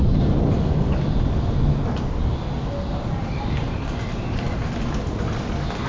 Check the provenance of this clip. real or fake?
real